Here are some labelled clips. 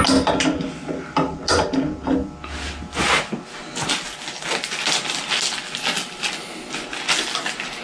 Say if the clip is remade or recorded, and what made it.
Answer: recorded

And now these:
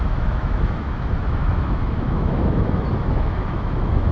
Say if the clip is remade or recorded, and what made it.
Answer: remade, autoencoder, DAC-VAE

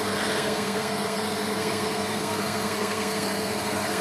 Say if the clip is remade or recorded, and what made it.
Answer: remade, codec, SNAC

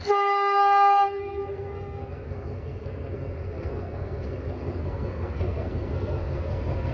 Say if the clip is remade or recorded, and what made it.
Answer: remade, codec, SNAC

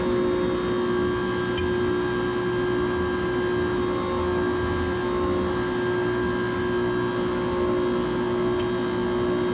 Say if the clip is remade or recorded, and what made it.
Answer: recorded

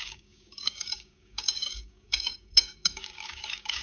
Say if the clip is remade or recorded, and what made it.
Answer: remade, codec, DAC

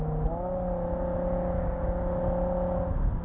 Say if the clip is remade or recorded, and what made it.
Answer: recorded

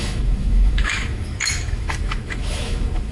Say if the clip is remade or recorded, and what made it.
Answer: remade, autoencoder, DAC-VAE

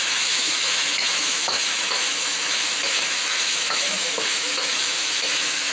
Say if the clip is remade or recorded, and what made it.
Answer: remade, autoencoder, DAC-VAE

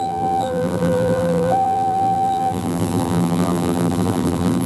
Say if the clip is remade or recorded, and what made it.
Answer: remade, vocoder, BigVGAN v2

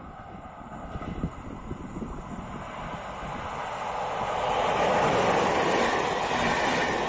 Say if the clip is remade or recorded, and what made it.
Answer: recorded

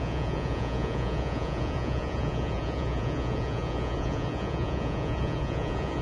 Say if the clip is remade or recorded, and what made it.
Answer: remade, vocoder, Vocos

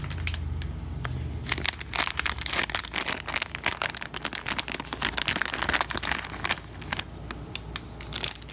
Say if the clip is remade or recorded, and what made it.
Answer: recorded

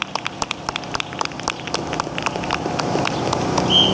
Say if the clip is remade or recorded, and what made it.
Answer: recorded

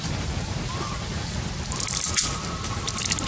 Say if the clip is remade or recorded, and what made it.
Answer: recorded